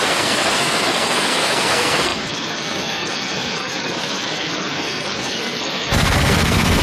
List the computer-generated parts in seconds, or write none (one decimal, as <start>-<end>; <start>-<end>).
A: 0.0-6.8